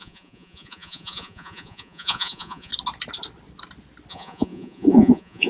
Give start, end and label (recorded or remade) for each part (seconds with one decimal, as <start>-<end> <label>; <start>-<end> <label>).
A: 0.0-2.7 remade; 2.7-4.1 recorded; 4.1-5.5 remade